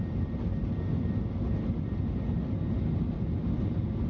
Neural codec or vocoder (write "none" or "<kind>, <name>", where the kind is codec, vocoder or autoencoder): none